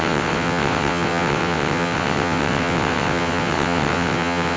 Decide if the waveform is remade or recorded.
remade